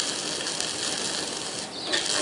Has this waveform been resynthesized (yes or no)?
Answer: no